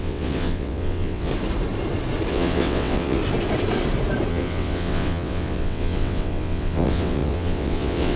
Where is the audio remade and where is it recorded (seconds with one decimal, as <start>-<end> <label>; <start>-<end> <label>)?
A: 0.0-1.3 remade; 1.3-2.3 recorded; 2.3-3.2 remade; 3.2-4.3 recorded; 4.3-8.2 remade